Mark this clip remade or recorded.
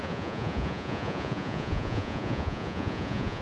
remade